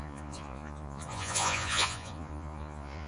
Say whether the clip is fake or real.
fake